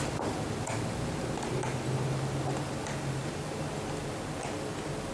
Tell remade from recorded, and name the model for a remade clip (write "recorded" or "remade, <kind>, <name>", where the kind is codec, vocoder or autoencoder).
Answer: recorded